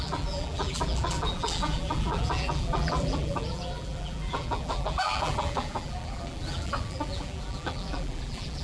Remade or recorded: remade